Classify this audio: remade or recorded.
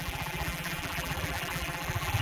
remade